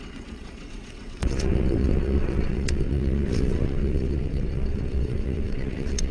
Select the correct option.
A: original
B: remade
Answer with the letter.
B